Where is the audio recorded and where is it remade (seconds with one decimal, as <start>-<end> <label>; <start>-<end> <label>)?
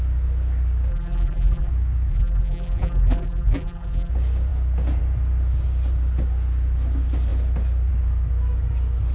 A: 0.0-0.9 recorded; 0.9-1.7 remade; 1.7-2.1 recorded; 2.1-4.1 remade; 4.1-9.1 recorded